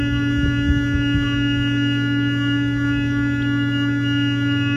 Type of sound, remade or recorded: recorded